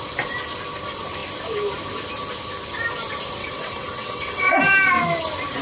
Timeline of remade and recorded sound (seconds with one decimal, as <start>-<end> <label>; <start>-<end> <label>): 0.0-3.4 recorded; 3.4-4.6 remade; 4.6-5.6 recorded